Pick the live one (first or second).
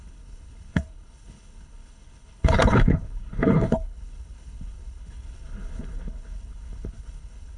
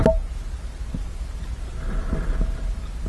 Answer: second